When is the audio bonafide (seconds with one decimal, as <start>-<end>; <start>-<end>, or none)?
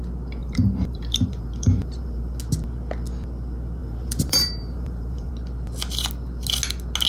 0.0-0.4; 2.4-3.8; 5.3-7.1